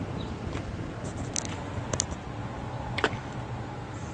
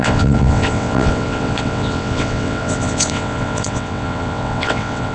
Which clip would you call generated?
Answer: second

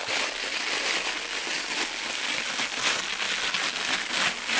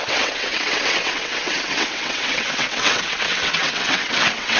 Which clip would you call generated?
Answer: second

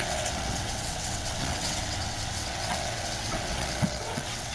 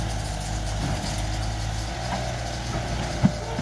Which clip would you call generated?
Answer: first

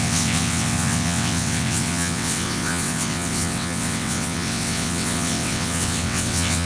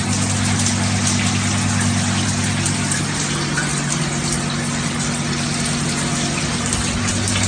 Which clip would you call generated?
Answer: first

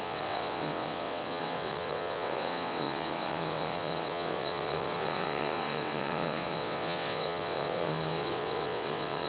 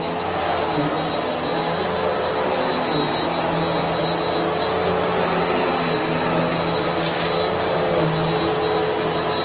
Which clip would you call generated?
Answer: first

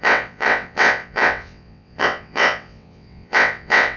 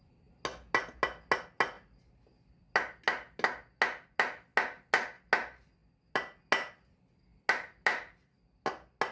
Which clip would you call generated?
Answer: first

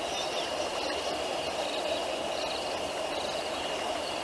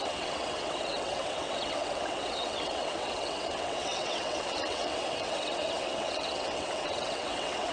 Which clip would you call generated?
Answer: second